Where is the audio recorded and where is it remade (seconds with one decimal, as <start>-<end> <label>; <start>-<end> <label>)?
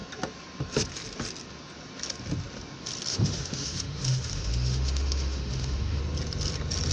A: 0.0-3.1 recorded; 3.1-6.0 remade; 6.0-6.9 recorded